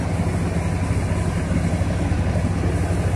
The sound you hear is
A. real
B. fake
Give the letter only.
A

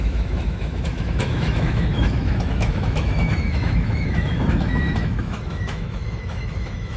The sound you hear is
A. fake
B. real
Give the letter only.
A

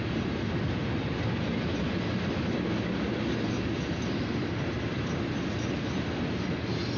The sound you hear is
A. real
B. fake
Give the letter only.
A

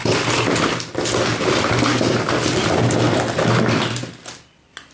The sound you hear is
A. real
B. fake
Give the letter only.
A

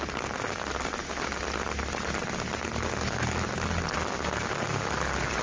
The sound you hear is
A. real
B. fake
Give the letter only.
A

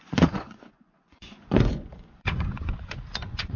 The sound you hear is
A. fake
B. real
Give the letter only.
A